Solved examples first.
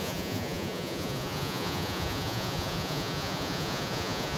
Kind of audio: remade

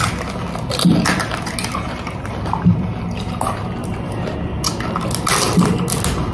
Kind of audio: recorded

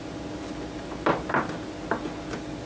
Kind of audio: recorded